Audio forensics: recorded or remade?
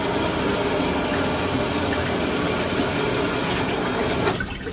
recorded